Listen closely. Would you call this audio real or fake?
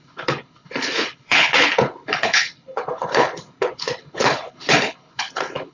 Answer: fake